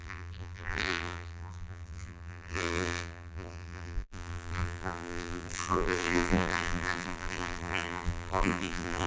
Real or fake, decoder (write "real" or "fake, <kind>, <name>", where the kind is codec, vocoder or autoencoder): fake, vocoder, BigVGAN v2